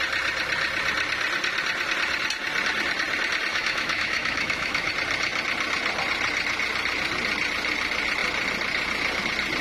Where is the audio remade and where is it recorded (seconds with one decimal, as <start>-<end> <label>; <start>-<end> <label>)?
0.0-3.5 recorded; 3.5-4.9 remade; 4.9-9.6 recorded